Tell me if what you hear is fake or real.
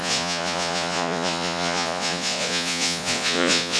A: fake